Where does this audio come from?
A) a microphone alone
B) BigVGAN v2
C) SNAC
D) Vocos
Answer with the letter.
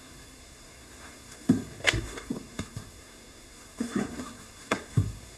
C